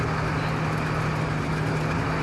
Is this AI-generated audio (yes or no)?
no